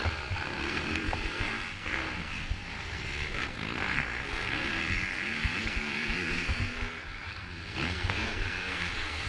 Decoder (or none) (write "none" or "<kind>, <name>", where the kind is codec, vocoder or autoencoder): codec, SNAC